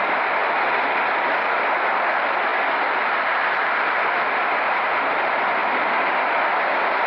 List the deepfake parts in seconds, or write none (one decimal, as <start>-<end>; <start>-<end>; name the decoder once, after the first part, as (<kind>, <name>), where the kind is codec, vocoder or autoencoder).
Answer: 2.5-4.0 (vocoder, BigVGAN v2)